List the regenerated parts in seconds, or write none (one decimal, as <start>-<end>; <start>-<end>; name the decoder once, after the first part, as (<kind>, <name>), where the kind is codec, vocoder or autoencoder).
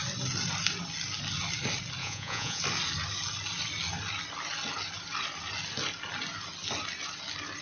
2.0-2.6 (vocoder, Vocos)